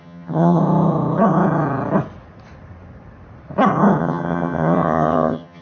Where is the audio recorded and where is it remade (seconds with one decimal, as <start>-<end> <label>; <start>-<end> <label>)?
0.0-0.6 remade; 0.6-4.0 recorded; 4.0-5.6 remade